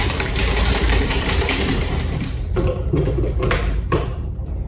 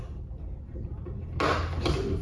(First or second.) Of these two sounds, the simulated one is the first